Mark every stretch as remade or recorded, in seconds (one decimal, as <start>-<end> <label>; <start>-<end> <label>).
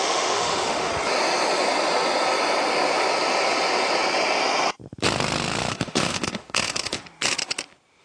0.0-0.9 remade; 0.9-5.7 recorded; 5.7-7.0 remade; 7.0-8.0 recorded